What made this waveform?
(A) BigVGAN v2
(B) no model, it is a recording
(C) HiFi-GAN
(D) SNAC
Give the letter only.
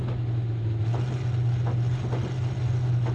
B